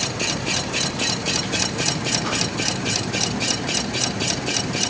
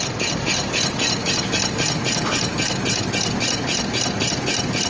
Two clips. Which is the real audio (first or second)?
second